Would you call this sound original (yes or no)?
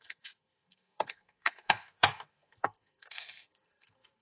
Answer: no